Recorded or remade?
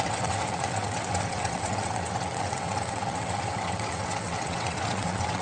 remade